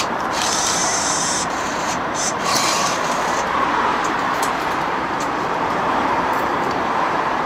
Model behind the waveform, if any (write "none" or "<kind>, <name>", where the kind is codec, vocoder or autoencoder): vocoder, BigVGAN v2